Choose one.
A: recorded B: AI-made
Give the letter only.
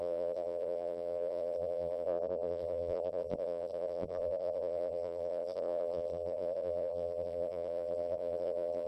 B